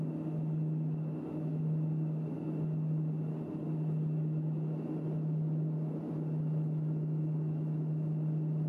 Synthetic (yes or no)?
no